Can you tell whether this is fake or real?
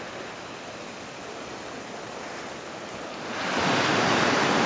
real